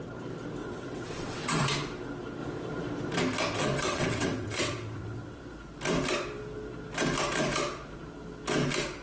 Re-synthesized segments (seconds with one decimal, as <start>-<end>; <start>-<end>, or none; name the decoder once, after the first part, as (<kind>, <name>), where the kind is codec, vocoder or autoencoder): 0.6-1.7 (vocoder, WaveNeXt); 3.6-5.4